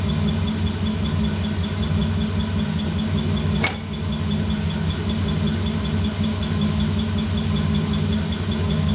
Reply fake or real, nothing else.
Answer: real